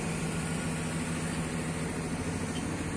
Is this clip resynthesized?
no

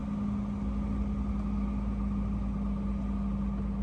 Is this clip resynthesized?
no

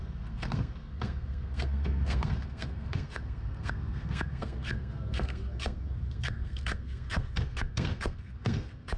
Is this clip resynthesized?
yes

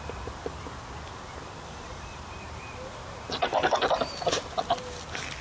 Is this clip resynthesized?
yes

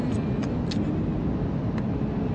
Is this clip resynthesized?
no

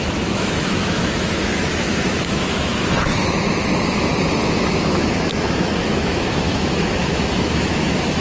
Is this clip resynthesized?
yes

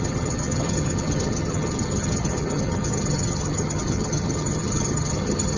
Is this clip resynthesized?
yes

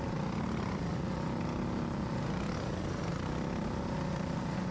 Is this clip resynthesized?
no